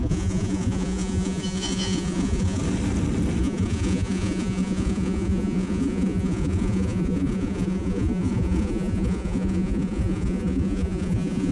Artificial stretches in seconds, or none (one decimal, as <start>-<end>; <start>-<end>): 0.0-2.6; 3.4-11.5